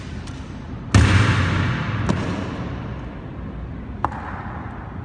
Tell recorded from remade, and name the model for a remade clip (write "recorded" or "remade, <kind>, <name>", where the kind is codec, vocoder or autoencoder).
recorded